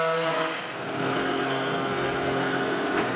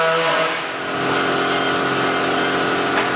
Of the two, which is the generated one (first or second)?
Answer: first